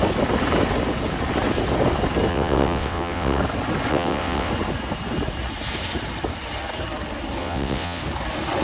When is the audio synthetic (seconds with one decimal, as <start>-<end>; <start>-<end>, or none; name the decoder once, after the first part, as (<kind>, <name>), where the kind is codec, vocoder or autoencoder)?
2.3-3.4 (vocoder, WaveNeXt); 3.9-4.5; 7.4-8.0

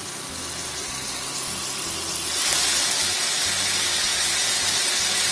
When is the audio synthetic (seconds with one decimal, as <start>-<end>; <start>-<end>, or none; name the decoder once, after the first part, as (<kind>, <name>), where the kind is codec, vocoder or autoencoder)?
none

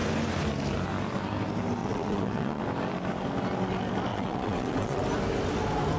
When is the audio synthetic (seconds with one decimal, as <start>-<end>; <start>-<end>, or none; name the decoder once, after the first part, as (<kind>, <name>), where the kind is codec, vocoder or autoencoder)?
1.8-2.6 (vocoder, WaveNeXt); 4.1-5.0

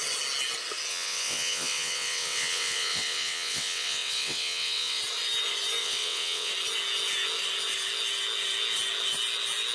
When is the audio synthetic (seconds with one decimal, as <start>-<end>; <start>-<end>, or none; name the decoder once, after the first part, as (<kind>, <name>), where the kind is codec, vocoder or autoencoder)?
0.9-5.0 (vocoder, WaveNeXt); 5.8-6.5

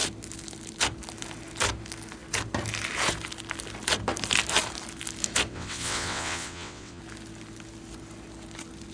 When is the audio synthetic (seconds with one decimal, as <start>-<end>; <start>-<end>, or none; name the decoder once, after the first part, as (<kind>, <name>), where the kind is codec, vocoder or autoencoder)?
5.5-7.0 (vocoder, WaveNeXt)